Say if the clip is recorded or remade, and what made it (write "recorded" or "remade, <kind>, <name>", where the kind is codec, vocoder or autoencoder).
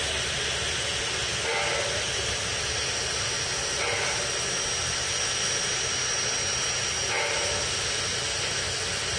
recorded